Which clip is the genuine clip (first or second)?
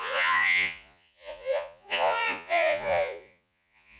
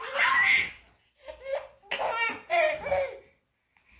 second